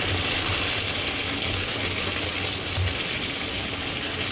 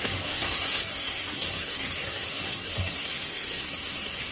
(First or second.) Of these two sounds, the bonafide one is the first